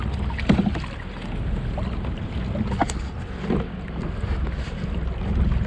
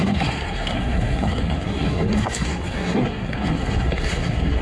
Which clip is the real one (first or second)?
first